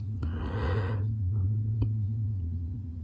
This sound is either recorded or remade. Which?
remade